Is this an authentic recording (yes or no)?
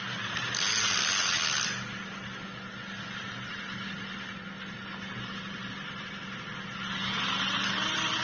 yes